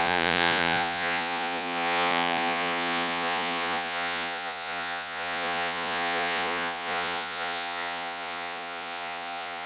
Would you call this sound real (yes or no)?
no